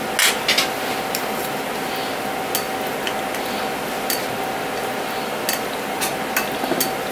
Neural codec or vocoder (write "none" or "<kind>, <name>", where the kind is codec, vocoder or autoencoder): none